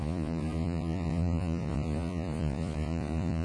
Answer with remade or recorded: remade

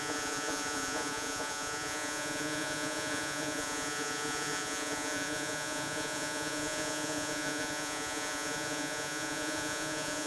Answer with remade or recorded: remade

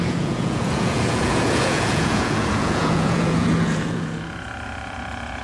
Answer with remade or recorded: remade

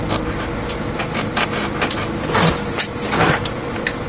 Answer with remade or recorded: recorded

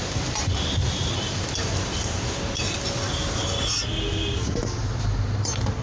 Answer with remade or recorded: recorded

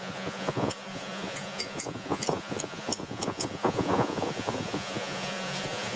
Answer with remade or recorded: remade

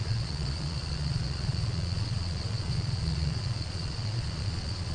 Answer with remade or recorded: remade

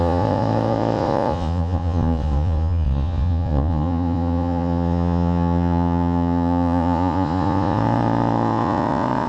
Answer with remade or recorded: remade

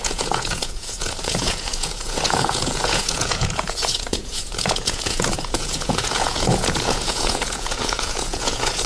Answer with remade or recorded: remade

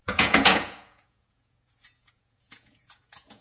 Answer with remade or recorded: remade